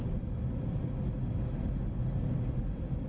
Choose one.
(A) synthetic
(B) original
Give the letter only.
B